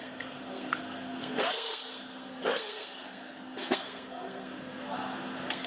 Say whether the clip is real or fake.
fake